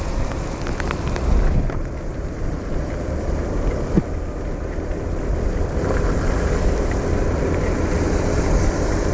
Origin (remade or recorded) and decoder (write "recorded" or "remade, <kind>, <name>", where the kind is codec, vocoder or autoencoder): remade, vocoder, BigVGAN v2